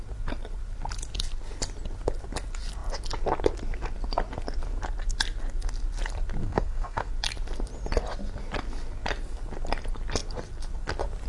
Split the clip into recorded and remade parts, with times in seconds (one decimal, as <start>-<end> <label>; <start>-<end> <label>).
0.0-6.4 recorded; 6.4-7.1 remade; 7.1-11.3 recorded